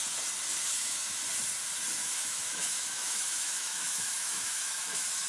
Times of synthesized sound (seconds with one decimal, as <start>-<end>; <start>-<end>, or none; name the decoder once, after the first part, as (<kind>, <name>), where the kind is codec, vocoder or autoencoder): 0.7-1.2 (autoencoder, DAC-VAE); 2.0-5.3